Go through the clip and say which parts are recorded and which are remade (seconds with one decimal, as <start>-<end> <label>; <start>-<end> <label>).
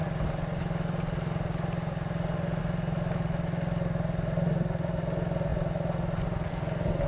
0.0-7.1 recorded